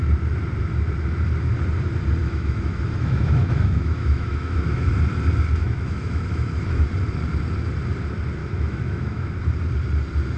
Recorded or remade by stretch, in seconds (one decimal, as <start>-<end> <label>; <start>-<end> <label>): 0.0-2.2 recorded; 2.2-4.9 remade; 4.9-5.6 recorded; 5.6-6.9 remade; 6.9-8.4 recorded; 8.4-9.3 remade; 9.3-10.4 recorded